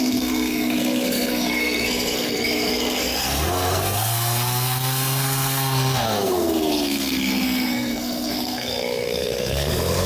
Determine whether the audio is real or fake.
fake